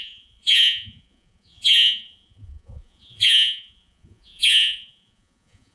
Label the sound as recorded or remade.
remade